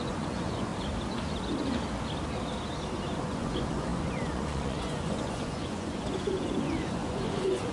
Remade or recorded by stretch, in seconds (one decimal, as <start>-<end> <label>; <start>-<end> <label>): 0.0-0.7 remade; 0.7-3.2 recorded; 3.2-7.7 remade

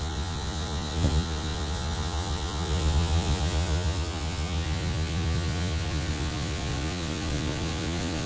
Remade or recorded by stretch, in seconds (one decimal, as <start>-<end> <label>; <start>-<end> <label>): 0.0-8.3 remade

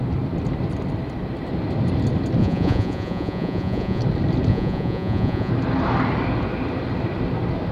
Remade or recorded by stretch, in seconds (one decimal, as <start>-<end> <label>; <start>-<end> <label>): 0.0-2.4 recorded; 2.4-4.0 remade; 4.0-4.5 recorded; 4.5-5.5 remade; 5.5-7.7 recorded